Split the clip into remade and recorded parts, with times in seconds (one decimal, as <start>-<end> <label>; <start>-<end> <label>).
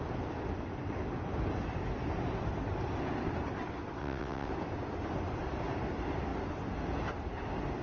0.0-4.0 recorded; 4.0-4.5 remade; 4.5-7.8 recorded